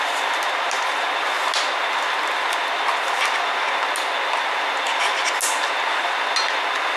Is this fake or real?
real